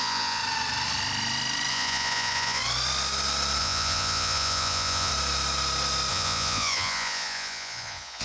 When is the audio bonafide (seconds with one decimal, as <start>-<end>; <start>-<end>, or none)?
0.4-1.7; 2.6-3.6; 5.1-6.1